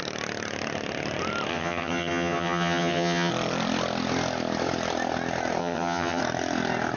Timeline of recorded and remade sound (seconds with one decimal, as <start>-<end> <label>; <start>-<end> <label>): 0.0-1.5 recorded; 1.5-3.3 remade; 3.3-5.6 recorded; 5.6-6.2 remade; 6.2-7.0 recorded

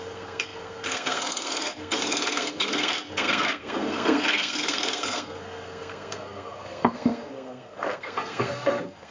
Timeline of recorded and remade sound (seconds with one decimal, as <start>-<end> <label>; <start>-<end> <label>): 0.0-9.1 remade

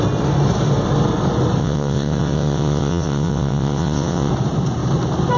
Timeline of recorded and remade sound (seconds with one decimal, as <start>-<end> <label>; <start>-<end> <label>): 0.0-1.6 recorded; 1.6-4.3 remade; 4.3-5.4 recorded

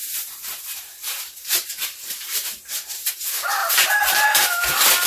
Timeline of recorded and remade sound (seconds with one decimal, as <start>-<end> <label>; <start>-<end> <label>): 0.0-3.1 remade; 3.1-3.6 recorded; 3.6-4.1 remade; 4.1-5.1 recorded